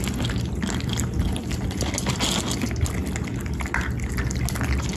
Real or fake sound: real